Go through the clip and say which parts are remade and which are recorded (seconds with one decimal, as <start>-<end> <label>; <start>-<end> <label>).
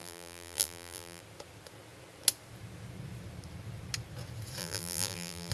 0.0-1.2 remade; 1.2-4.6 recorded; 4.6-5.5 remade